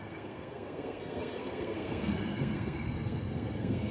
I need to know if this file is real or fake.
fake